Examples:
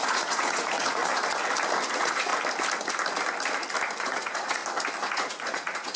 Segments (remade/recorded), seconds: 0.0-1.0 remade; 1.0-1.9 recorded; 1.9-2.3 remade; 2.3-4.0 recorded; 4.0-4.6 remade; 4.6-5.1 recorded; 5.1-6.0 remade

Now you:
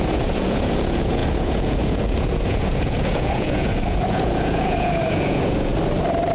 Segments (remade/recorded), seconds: 0.0-5.7 remade; 5.7-6.3 recorded

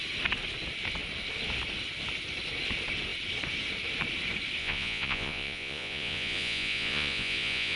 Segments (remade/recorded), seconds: 0.0-4.6 recorded; 4.6-7.8 remade

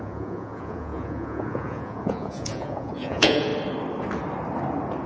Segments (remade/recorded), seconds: 0.0-3.5 remade; 3.5-5.1 recorded

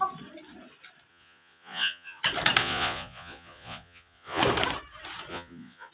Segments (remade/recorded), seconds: 0.0-1.1 recorded; 1.1-2.2 remade; 2.2-2.6 recorded; 2.6-4.4 remade; 4.4-5.3 recorded; 5.3-5.9 remade

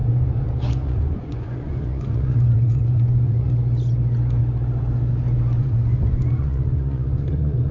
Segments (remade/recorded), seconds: 0.0-3.5 remade; 3.5-5.6 recorded; 5.6-7.7 remade